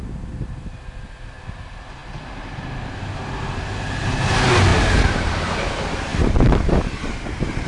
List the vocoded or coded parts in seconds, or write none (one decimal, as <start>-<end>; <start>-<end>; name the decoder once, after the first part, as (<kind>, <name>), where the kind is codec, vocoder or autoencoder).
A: 4.7-5.3 (vocoder, BigVGAN v2); 6.1-6.8